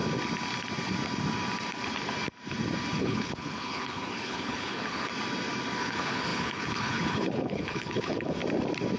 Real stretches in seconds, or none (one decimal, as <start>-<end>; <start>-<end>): 0.0-3.0; 5.1-5.8; 8.4-9.0